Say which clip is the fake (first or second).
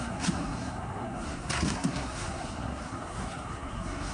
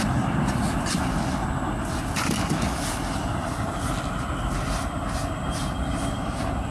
first